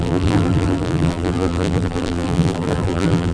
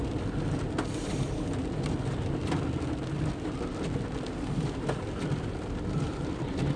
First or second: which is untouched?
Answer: second